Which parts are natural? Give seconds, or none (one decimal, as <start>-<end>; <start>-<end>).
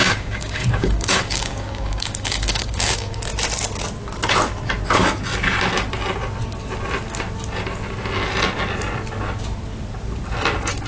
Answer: 3.2-10.9